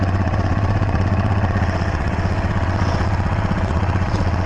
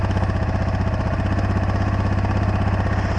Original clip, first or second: second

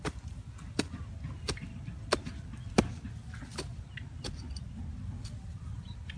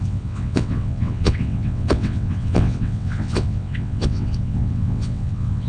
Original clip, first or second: first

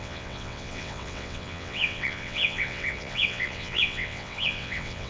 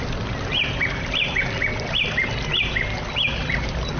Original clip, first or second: second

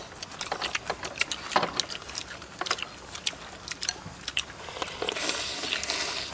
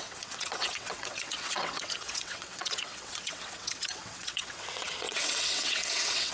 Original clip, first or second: first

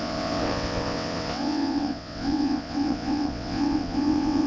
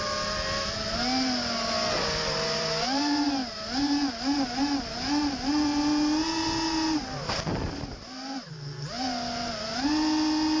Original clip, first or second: second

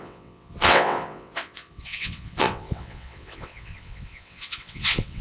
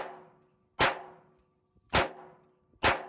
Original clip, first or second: second